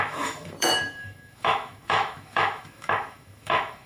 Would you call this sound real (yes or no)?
no